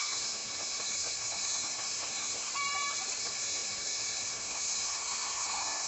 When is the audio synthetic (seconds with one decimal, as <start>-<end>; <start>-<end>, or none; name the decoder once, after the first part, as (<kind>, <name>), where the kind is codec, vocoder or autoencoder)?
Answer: 0.0-2.5 (codec, SNAC); 3.2-5.9